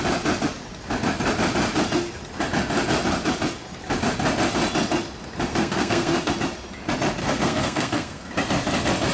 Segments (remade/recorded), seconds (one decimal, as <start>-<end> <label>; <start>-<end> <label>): 0.0-5.5 recorded; 5.5-6.3 remade; 6.3-7.2 recorded; 7.2-8.3 remade; 8.3-9.1 recorded